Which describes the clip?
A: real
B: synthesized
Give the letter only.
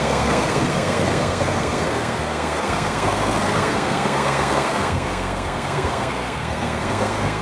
B